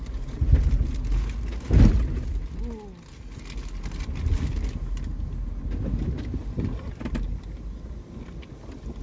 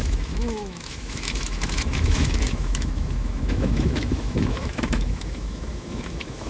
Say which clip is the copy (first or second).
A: second